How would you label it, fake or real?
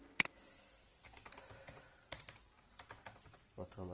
real